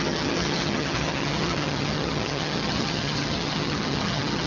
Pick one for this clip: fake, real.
fake